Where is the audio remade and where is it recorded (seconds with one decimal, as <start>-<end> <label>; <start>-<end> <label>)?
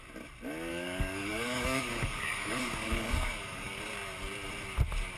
0.0-0.7 recorded; 0.7-3.8 remade; 3.8-5.2 recorded